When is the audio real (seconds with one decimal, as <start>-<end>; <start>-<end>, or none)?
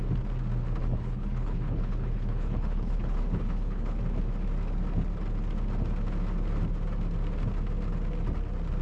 0.0-0.8; 4.0-8.8